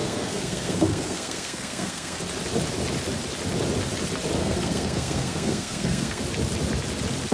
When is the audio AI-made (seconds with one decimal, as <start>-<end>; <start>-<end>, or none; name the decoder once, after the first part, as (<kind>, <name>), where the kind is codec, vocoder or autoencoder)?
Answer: 0.0-2.2 (codec, SNAC); 4.4-6.2